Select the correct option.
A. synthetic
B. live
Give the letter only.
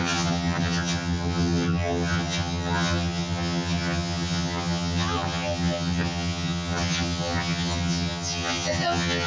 A